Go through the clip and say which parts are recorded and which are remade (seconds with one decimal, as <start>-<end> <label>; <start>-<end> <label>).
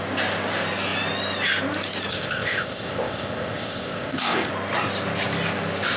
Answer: 0.0-2.1 recorded; 2.1-4.5 remade; 4.5-6.0 recorded